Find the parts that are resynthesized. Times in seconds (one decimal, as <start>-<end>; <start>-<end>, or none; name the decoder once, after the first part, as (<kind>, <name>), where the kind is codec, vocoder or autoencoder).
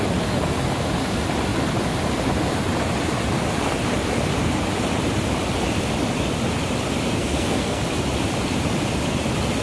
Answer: 7.1-7.8 (codec, SNAC)